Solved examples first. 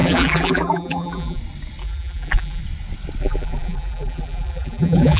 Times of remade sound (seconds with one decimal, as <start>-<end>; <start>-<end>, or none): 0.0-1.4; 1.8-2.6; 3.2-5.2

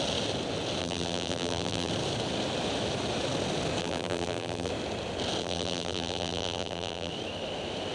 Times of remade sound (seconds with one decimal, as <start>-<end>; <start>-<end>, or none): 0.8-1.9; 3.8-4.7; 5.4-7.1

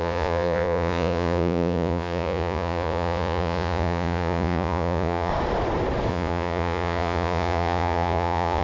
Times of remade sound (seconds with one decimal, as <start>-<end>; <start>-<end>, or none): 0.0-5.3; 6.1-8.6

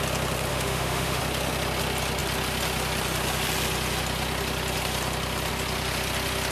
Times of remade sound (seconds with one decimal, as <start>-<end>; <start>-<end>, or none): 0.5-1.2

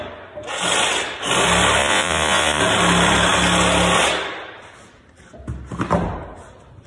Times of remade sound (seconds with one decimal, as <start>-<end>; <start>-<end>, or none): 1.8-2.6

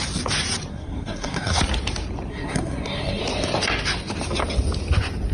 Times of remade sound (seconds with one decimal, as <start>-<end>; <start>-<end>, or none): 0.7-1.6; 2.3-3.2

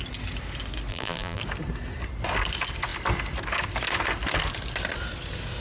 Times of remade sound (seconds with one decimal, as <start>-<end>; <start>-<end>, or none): 0.9-1.4